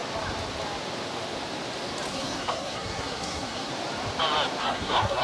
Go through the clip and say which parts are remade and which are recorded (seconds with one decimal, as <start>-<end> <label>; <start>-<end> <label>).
0.0-2.1 recorded; 2.1-3.7 remade; 3.7-4.6 recorded; 4.6-5.2 remade